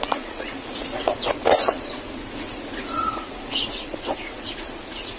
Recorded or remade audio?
remade